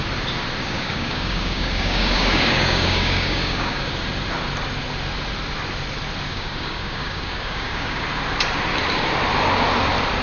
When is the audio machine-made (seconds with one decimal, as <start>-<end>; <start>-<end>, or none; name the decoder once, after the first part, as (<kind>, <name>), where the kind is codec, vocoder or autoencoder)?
0.6-3.9 (codec, DAC); 6.3-8.0